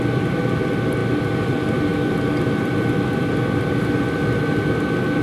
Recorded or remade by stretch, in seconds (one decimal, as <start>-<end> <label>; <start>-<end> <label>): 0.0-5.2 recorded